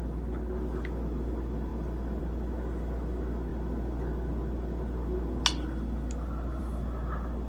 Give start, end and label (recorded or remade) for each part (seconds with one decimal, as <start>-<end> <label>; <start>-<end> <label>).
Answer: 0.0-7.5 recorded